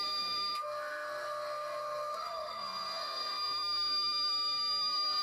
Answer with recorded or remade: remade